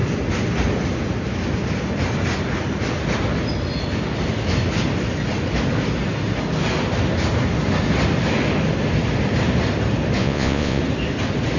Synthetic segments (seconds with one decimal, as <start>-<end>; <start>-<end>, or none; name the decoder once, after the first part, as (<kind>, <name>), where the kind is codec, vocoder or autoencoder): 10.2-10.8 (vocoder, Vocos)